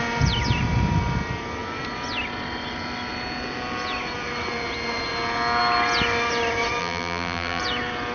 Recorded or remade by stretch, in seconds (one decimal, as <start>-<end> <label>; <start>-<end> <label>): 0.0-6.8 recorded; 6.8-7.6 remade; 7.6-8.1 recorded